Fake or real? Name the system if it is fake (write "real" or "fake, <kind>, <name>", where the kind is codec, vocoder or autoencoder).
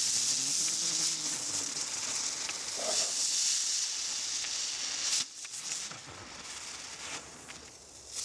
real